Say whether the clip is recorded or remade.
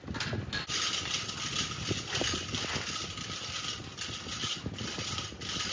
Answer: recorded